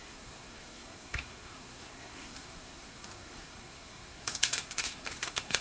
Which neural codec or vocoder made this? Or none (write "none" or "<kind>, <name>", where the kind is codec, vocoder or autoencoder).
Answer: codec, SNAC